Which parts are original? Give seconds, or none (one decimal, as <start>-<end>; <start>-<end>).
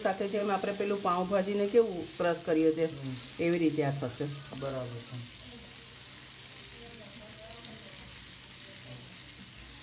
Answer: 0.0-9.8